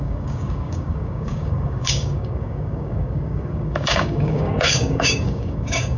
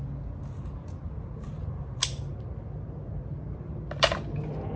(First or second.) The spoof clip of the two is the first